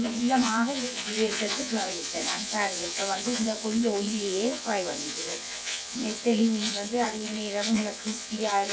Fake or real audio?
fake